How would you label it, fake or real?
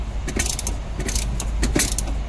real